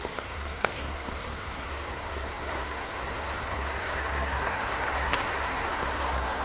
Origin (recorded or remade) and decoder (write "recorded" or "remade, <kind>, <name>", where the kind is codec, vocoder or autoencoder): remade, codec, SNAC